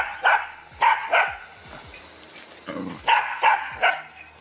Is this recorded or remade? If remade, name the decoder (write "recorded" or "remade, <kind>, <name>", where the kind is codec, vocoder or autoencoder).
recorded